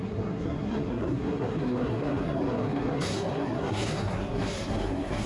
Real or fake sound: fake